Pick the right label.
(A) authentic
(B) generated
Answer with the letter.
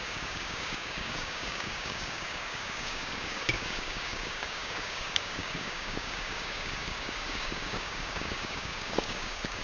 B